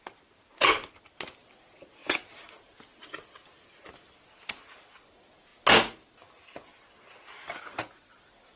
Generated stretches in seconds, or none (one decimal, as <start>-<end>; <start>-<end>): none